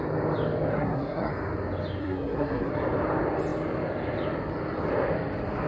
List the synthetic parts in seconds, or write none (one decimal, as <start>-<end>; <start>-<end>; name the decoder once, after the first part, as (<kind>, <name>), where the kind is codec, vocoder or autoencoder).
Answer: 0.7-1.3 (codec, SNAC); 2.0-2.7